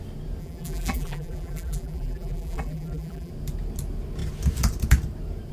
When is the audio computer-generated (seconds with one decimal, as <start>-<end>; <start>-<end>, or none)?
0.4-3.3